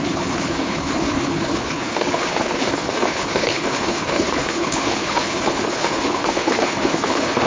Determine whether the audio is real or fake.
fake